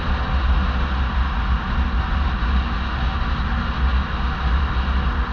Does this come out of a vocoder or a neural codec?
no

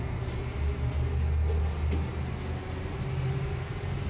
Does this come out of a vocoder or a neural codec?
no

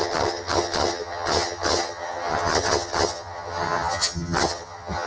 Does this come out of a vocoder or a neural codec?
yes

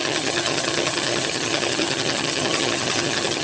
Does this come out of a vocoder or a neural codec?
yes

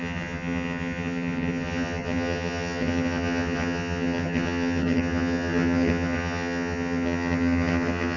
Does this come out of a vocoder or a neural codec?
yes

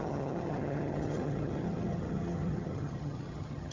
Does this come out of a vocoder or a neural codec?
yes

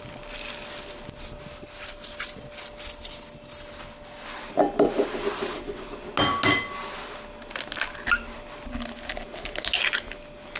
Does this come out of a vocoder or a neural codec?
no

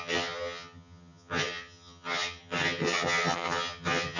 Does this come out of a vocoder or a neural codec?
yes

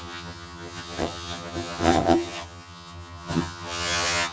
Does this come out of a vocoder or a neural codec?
yes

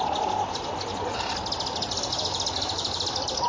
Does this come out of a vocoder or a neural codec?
no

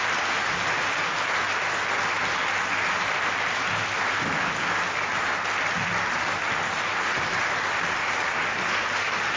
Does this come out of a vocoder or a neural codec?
no